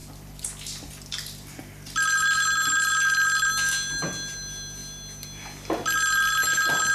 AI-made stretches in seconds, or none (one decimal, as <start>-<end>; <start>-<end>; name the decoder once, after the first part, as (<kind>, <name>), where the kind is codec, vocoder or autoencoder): none